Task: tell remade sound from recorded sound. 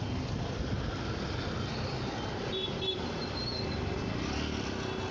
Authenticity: recorded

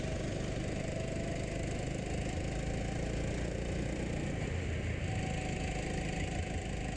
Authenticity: recorded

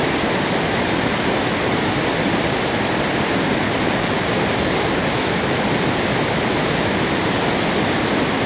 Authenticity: recorded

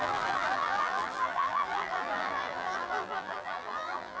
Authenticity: remade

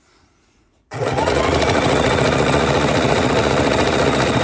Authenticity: remade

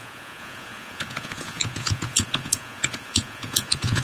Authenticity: remade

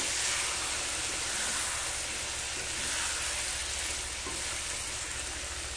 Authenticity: recorded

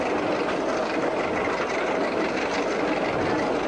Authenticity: recorded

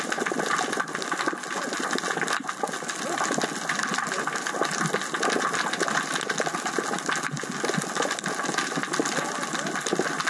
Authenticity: recorded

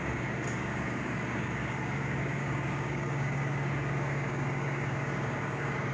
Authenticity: remade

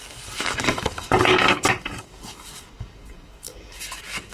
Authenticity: remade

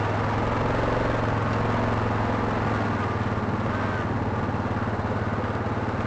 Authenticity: recorded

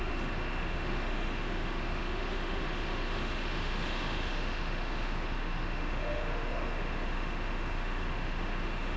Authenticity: remade